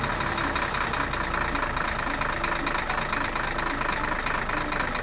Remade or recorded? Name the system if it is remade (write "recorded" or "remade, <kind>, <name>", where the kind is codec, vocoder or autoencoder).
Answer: recorded